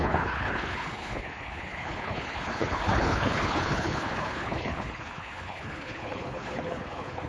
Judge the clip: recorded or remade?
remade